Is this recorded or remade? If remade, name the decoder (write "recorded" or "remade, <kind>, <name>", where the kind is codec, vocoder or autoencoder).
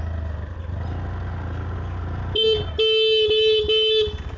recorded